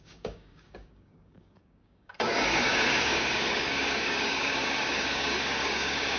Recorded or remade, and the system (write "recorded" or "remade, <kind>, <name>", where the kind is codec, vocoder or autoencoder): remade, codec, DAC